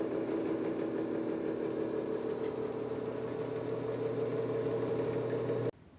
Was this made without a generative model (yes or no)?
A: yes